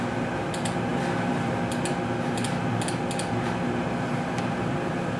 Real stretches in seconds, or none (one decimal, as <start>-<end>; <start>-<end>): 0.0-0.9; 1.6-5.2